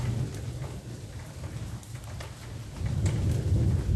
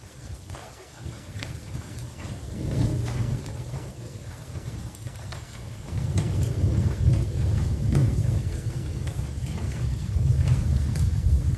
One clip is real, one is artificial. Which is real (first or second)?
first